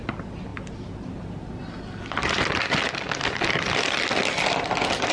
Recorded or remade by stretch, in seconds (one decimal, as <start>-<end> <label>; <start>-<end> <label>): 0.0-5.1 recorded